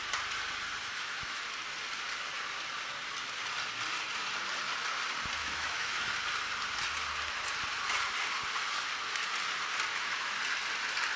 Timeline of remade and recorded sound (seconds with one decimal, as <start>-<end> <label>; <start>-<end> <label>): 0.0-0.8 recorded; 0.8-1.4 remade; 1.4-5.4 recorded; 5.4-6.1 remade; 6.1-9.9 recorded; 9.9-10.4 remade; 10.4-11.2 recorded